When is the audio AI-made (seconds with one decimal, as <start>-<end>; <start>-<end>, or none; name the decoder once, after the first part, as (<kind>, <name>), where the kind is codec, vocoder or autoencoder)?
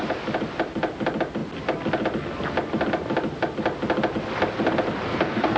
5.1-5.6 (codec, SNAC)